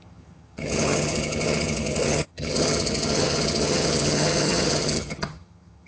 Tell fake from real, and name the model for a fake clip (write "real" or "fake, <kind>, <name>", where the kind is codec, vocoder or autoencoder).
fake, vocoder, HiFi-GAN